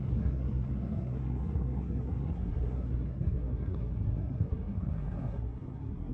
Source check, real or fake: fake